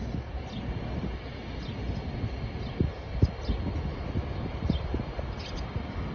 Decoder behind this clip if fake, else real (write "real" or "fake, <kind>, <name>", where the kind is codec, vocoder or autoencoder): real